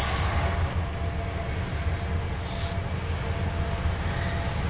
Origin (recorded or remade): recorded